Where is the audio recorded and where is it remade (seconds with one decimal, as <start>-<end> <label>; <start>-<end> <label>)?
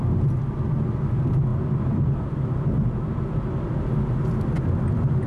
0.0-5.3 recorded